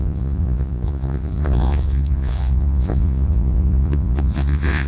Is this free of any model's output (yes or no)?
no